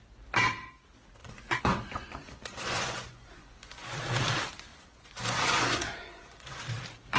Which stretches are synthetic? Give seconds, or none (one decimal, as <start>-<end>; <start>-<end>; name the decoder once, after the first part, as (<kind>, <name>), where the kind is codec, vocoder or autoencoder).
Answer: 1.2-3.9 (vocoder, Vocos); 4.7-6.6